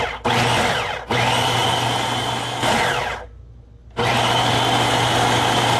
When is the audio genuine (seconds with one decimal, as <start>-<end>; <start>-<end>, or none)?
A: 0.0-5.8